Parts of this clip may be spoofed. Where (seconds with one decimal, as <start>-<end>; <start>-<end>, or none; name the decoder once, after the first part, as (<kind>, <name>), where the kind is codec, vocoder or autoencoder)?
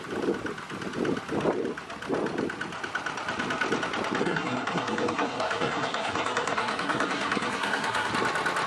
4.2-8.1 (codec, SNAC)